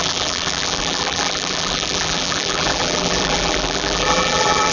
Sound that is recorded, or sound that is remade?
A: remade